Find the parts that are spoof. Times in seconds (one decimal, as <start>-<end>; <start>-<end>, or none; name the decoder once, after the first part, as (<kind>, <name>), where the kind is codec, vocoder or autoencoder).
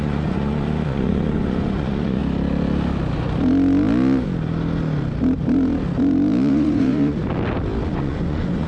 0.0-2.2 (vocoder, Vocos); 6.5-7.2; 7.9-8.7